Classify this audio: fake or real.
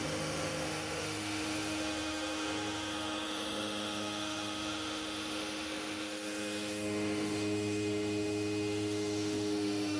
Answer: fake